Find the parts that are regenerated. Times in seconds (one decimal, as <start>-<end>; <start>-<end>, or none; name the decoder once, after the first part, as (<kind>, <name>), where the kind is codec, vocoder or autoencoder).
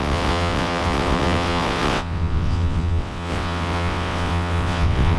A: 0.0-5.2 (vocoder, WaveNeXt)